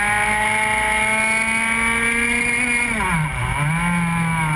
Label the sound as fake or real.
real